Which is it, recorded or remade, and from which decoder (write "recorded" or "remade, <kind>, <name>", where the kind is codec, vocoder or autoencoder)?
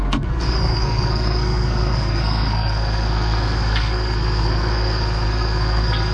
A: remade, codec, SNAC